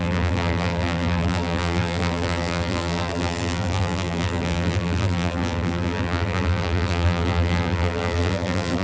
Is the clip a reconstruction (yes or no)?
yes